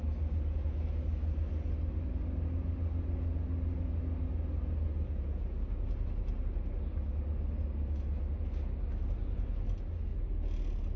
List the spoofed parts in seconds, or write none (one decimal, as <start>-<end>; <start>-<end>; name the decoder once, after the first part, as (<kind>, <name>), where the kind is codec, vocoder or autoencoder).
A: none